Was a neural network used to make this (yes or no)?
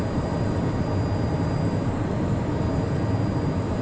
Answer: no